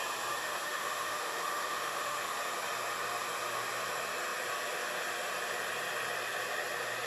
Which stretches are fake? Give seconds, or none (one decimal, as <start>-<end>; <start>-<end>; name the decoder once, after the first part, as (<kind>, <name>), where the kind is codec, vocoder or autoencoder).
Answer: 0.4-2.3 (autoencoder, DAC-VAE)